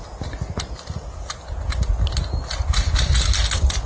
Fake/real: real